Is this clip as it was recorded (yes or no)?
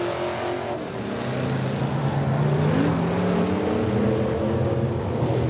yes